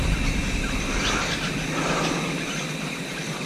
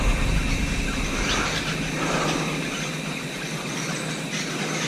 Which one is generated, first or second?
first